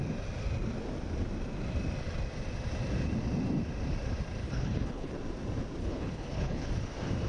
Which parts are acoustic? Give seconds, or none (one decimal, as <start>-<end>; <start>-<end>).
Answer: 0.0-4.4; 5.1-5.8; 6.7-7.3